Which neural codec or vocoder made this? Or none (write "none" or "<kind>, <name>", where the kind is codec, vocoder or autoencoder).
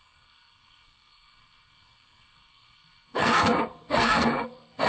codec, SNAC